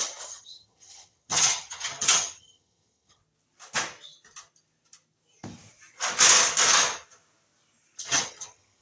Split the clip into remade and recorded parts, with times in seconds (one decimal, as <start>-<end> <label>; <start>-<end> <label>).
0.0-3.2 remade; 3.2-8.0 recorded; 8.0-8.8 remade